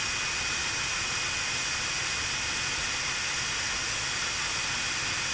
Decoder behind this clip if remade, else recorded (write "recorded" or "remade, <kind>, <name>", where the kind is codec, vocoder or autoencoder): recorded